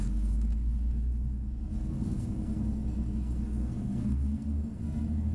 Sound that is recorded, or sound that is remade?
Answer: remade